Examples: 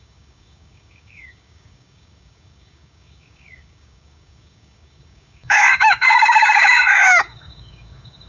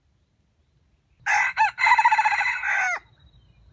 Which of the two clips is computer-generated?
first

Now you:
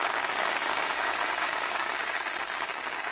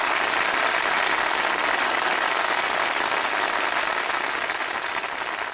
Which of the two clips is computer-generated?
first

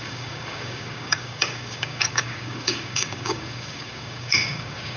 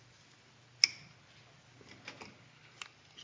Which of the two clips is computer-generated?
first